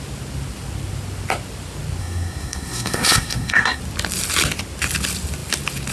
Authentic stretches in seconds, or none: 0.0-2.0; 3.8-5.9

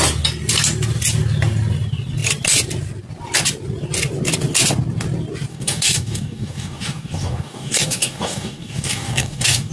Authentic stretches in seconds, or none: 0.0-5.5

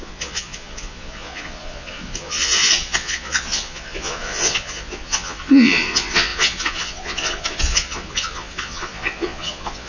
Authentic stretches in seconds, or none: none